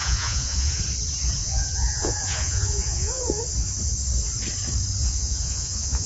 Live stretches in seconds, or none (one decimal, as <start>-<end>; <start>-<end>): 0.8-1.4; 3.4-5.0